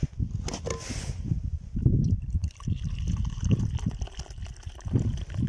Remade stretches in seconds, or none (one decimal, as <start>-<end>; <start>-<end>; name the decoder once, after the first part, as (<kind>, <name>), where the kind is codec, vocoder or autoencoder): 2.4-3.6 (vocoder, BigVGAN v2)